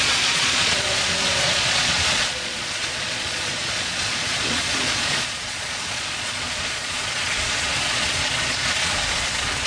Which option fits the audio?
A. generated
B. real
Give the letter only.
A